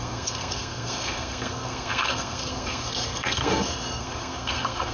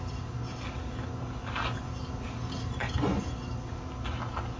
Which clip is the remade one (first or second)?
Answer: first